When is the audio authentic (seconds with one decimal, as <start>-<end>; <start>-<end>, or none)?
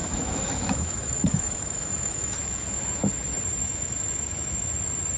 3.1-3.6; 4.7-5.2